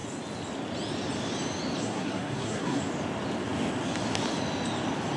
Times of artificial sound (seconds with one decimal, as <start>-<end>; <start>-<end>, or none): 1.8-2.8